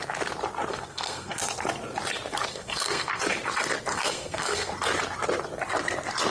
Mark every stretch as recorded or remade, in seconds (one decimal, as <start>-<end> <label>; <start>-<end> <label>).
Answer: 0.0-0.7 recorded; 0.7-1.4 remade; 1.4-2.5 recorded; 2.5-3.2 remade; 3.2-3.9 recorded; 3.9-4.7 remade; 4.7-6.3 recorded